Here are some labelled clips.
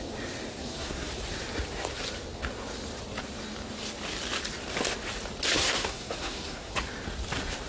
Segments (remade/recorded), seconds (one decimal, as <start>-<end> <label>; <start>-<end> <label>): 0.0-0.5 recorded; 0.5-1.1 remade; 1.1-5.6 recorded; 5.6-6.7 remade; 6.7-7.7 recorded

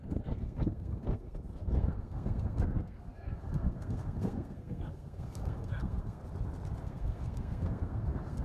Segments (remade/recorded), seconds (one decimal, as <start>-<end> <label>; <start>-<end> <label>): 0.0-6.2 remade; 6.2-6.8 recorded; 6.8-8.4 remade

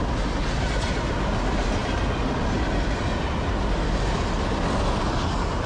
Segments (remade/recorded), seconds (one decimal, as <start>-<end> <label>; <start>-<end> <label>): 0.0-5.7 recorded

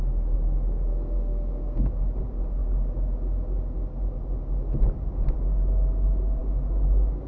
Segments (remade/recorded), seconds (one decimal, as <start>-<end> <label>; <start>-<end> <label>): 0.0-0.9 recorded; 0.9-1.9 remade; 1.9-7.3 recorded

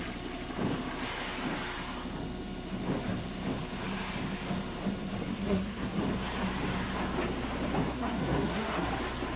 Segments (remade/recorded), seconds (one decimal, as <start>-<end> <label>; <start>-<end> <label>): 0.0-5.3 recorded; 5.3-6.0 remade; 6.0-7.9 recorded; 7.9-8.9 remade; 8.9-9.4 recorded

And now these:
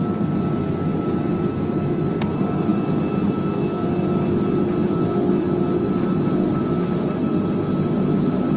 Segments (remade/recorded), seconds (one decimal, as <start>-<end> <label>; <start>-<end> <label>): 0.0-8.6 recorded

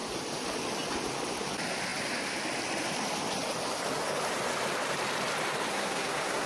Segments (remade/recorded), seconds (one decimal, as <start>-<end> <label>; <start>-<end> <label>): 0.0-5.7 recorded; 5.7-6.5 remade

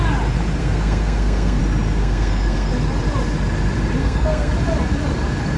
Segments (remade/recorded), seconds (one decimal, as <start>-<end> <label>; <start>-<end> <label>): 0.0-0.6 recorded; 0.6-1.6 remade; 1.6-2.0 recorded; 2.0-2.7 remade; 2.7-4.0 recorded; 4.0-4.5 remade; 4.5-5.6 recorded